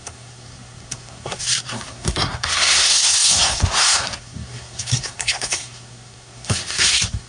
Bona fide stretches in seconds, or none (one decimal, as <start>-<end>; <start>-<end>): none